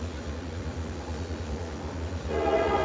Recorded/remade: remade